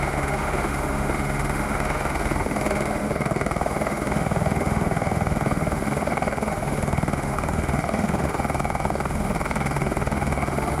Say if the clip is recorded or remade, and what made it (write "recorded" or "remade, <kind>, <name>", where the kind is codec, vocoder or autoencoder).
remade, autoencoder, DAC-VAE